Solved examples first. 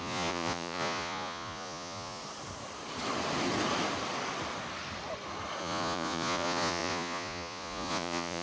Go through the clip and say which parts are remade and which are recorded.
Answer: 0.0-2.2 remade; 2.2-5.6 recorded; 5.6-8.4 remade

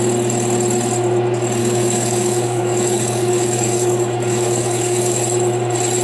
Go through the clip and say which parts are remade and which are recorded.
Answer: 0.0-1.6 recorded; 1.6-5.2 remade; 5.2-6.0 recorded